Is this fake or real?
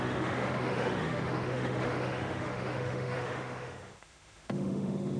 fake